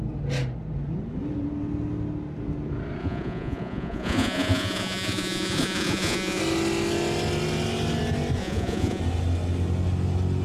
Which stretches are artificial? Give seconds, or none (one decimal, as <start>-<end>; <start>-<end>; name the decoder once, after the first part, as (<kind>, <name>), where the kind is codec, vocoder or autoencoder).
3.0-6.4 (vocoder, Vocos); 8.4-9.0